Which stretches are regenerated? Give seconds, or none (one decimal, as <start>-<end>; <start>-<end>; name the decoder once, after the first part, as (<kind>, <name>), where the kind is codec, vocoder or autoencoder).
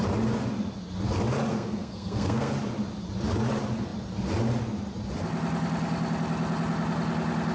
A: 1.5-2.5 (codec, SNAC)